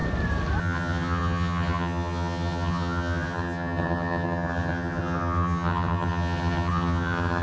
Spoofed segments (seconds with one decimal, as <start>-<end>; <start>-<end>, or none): 0.6-7.4